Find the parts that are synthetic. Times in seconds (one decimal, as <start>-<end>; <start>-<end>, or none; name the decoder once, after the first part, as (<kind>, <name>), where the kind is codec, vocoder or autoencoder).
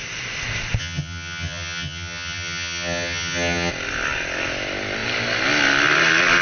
0.8-3.7 (vocoder, HiFi-GAN)